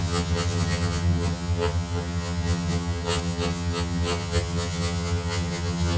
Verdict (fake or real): fake